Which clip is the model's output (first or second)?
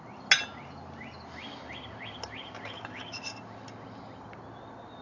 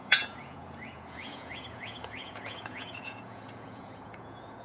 second